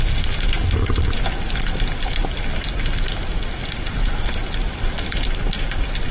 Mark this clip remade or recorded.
remade